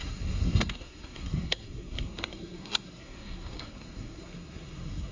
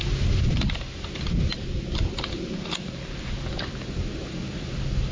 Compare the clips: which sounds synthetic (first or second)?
first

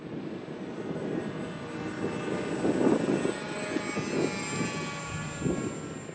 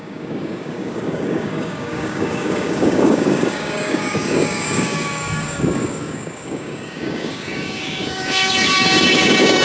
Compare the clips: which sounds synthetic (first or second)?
second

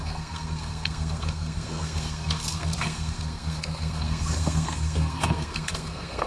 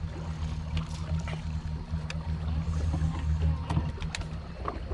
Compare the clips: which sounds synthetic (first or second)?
first